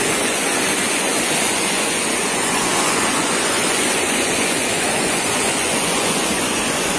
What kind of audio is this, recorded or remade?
remade